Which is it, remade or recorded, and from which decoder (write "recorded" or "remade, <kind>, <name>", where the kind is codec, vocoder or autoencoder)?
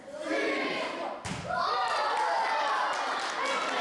recorded